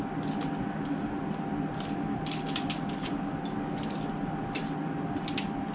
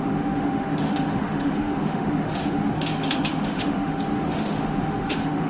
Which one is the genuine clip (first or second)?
first